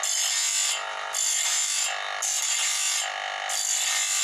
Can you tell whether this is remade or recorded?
recorded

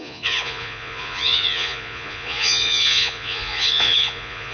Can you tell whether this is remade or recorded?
remade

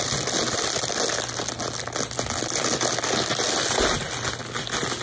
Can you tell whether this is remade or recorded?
recorded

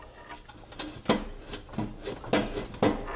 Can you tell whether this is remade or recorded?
recorded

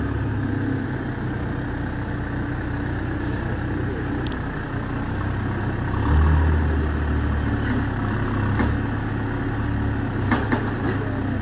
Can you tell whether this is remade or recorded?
recorded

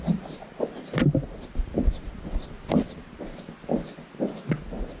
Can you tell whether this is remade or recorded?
recorded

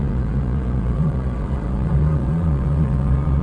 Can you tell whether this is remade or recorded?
remade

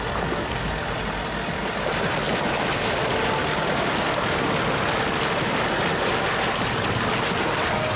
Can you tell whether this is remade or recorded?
recorded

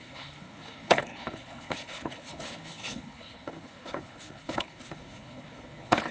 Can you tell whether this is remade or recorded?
remade